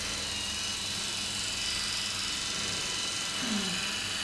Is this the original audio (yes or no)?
yes